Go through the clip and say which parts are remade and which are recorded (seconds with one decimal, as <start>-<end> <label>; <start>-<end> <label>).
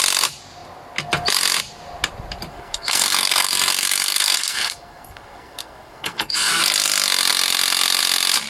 0.0-2.5 recorded; 2.5-6.6 remade; 6.6-8.5 recorded